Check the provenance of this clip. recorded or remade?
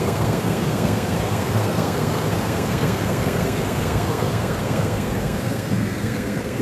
remade